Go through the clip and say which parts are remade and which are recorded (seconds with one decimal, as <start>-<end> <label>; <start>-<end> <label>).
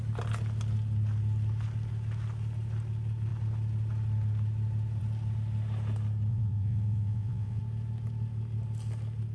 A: 0.0-6.3 recorded; 6.3-7.6 remade; 7.6-9.3 recorded